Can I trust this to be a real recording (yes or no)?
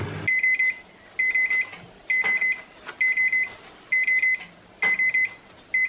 yes